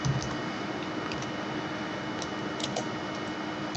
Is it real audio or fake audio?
real